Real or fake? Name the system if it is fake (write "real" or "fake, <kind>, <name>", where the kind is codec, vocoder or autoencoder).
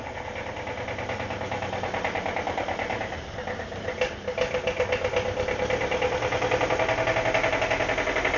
real